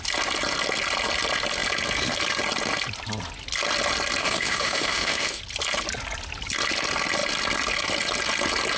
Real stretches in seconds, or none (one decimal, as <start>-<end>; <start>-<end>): 0.0-4.2; 5.4-8.8